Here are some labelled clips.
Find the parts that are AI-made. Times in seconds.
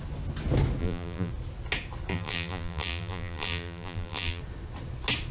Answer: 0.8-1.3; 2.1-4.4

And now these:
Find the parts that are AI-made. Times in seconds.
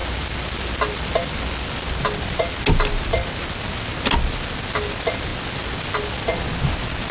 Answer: none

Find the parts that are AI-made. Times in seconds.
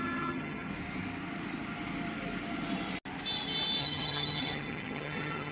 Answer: 0.0-0.7; 3.8-5.5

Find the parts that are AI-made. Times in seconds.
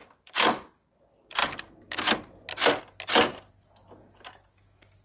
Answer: none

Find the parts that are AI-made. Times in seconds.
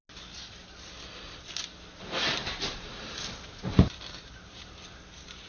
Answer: 2.4-4.7